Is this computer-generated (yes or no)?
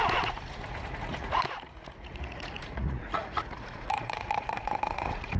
yes